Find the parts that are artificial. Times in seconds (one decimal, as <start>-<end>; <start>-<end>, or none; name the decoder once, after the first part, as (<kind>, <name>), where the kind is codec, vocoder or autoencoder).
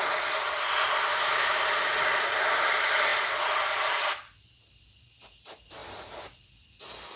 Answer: 1.1-1.6 (autoencoder, DAC-VAE)